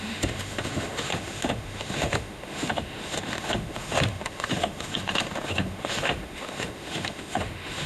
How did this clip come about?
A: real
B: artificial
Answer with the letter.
B